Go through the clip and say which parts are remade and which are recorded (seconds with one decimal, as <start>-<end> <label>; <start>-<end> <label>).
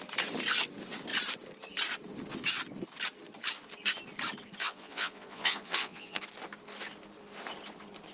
0.0-4.6 recorded; 4.6-6.2 remade; 6.2-8.1 recorded